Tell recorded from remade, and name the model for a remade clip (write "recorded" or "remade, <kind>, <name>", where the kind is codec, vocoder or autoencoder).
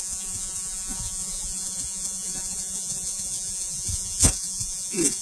remade, vocoder, Vocos